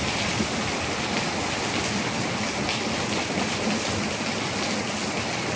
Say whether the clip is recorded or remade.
recorded